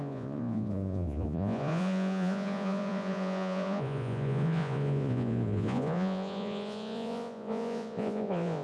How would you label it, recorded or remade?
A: remade